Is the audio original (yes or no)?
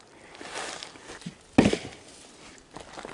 yes